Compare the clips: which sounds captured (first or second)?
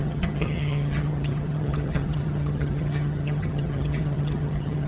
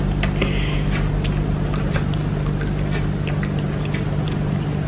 second